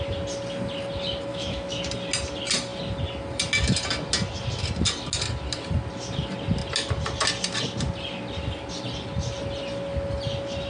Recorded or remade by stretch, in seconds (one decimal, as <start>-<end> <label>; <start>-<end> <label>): 0.0-1.3 recorded; 1.3-1.8 remade; 1.8-10.7 recorded